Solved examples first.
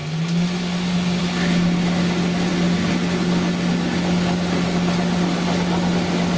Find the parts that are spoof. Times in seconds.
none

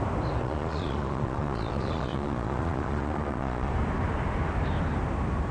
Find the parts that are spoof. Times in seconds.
0.4-3.7 (vocoder, Vocos)

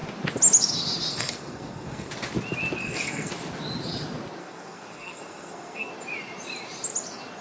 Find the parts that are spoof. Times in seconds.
1.1-2.1 (codec, SNAC); 2.8-3.3; 4.4-5.9

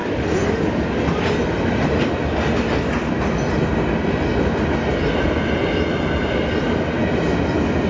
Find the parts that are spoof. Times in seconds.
none

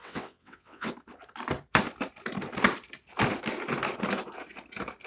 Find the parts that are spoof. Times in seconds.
0.0-0.9 (vocoder, WaveNeXt)